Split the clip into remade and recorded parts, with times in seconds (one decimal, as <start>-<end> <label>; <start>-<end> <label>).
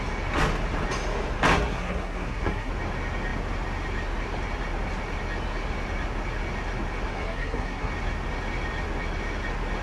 0.0-1.5 recorded; 1.5-2.7 remade; 2.7-7.1 recorded; 7.1-7.9 remade; 7.9-9.8 recorded